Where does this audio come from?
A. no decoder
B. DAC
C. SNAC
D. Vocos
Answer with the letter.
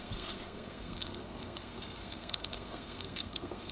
C